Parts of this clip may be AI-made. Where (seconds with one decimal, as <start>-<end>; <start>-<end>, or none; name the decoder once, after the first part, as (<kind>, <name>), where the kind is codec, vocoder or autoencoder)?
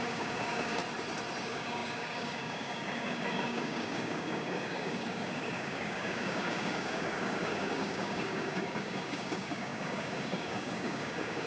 0.0-0.8 (codec, DAC); 1.4-11.5